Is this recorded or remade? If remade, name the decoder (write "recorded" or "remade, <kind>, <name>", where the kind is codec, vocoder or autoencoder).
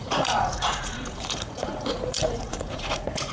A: remade, vocoder, Vocos